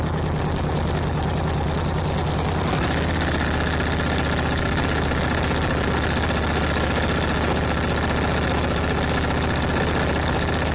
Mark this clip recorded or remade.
recorded